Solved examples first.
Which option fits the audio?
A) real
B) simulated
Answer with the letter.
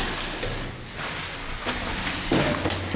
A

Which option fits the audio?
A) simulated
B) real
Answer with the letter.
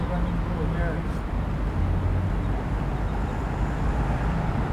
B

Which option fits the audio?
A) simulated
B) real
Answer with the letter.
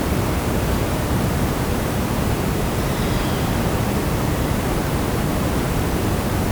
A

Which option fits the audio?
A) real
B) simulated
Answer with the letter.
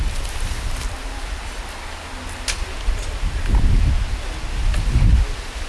A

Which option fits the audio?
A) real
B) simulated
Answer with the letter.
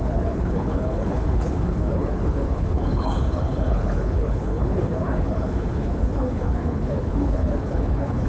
B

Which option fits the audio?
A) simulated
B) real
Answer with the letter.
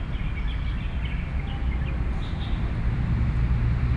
B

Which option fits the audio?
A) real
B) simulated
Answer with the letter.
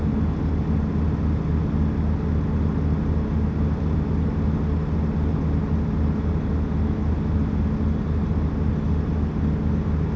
A